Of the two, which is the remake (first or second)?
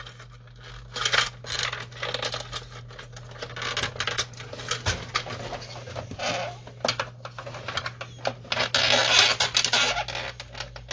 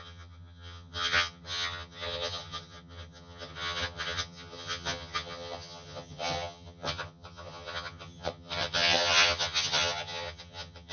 second